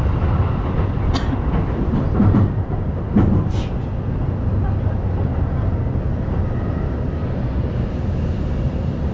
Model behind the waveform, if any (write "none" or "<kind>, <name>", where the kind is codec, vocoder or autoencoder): none